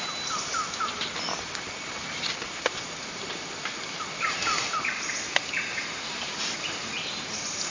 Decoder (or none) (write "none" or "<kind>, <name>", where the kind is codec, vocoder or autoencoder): none